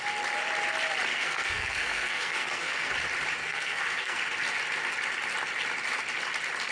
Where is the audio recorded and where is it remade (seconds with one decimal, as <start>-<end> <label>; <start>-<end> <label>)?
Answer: 0.0-1.1 recorded; 1.1-2.9 remade; 2.9-3.4 recorded; 3.4-4.2 remade; 4.2-6.7 recorded